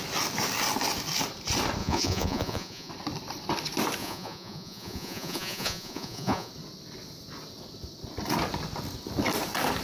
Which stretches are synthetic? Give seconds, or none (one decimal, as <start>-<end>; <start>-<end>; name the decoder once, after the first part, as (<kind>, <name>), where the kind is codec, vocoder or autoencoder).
1.8-2.9 (vocoder, Vocos); 4.0-6.5